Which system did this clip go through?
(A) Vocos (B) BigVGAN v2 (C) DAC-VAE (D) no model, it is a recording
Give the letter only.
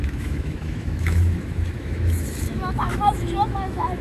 C